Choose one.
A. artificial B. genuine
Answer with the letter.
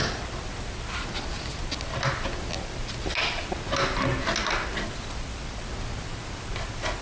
B